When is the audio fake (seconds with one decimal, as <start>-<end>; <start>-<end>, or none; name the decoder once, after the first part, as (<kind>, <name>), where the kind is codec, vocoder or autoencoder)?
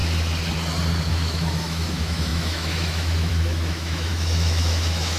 1.1-5.2 (autoencoder, DAC-VAE)